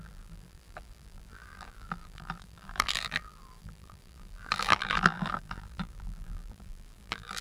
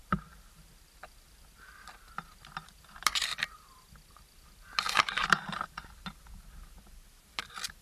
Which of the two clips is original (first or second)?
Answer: second